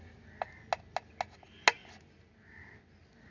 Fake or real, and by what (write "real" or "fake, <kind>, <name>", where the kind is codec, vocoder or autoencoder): real